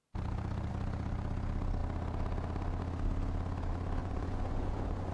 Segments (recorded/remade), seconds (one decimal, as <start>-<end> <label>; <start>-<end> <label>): 0.0-4.0 recorded; 4.0-5.1 remade